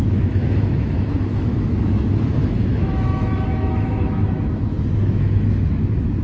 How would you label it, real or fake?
fake